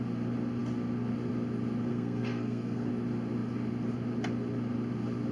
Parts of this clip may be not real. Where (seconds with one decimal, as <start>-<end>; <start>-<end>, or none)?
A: 1.9-2.9